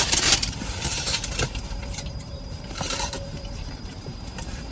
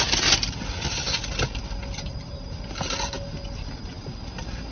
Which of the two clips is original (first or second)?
second